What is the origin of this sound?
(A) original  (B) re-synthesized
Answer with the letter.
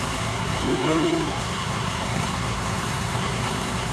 B